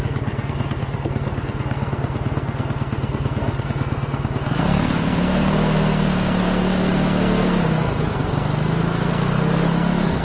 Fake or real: fake